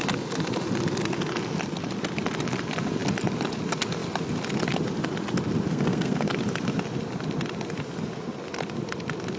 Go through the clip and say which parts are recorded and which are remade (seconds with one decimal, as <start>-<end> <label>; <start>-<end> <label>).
0.0-5.7 recorded; 5.7-6.3 remade; 6.3-9.4 recorded